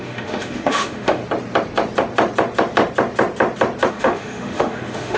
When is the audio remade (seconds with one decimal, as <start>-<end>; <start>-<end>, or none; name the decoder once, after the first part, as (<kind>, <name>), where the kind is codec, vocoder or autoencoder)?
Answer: 0.0-1.2 (autoencoder, DAC-VAE); 3.9-5.2